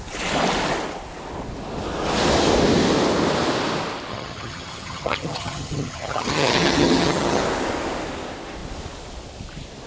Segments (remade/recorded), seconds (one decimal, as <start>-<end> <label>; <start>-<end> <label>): 0.0-4.1 recorded; 4.1-7.4 remade; 7.4-9.9 recorded